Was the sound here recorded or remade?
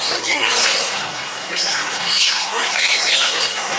remade